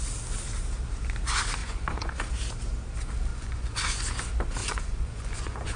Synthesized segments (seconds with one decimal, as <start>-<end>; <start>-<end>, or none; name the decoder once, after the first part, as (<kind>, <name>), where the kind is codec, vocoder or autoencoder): 1.6-2.3 (vocoder, Vocos); 3.3-4.0; 4.6-5.8